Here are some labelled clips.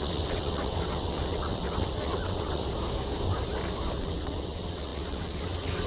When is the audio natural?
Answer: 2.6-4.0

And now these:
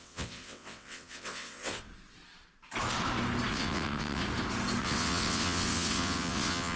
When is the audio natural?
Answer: 1.9-3.5; 4.2-4.8